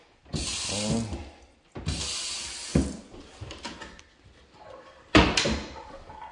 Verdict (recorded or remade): recorded